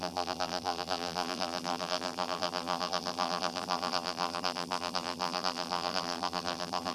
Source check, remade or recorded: remade